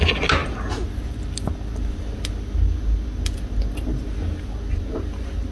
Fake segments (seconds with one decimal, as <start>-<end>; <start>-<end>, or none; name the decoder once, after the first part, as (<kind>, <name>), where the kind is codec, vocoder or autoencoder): none